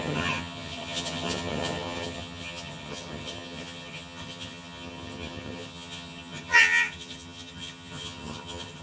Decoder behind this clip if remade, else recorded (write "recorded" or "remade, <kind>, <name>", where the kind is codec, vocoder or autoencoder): remade, vocoder, HiFi-GAN